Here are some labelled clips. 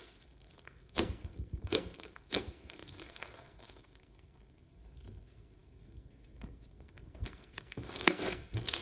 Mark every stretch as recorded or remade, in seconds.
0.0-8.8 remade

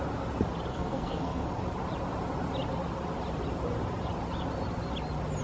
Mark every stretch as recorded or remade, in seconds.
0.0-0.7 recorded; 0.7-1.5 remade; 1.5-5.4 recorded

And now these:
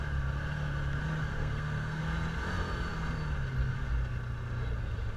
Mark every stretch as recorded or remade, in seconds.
0.0-1.3 recorded; 1.3-2.0 remade; 2.0-5.2 recorded

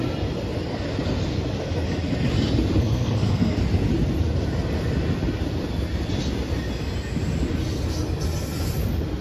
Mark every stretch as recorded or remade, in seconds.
0.0-2.8 recorded; 2.8-3.6 remade; 3.6-9.2 recorded

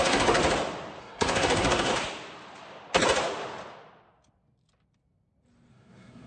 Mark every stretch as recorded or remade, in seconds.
0.0-0.4 remade; 0.4-1.0 recorded; 1.0-1.9 remade; 1.9-5.7 recorded; 5.7-6.3 remade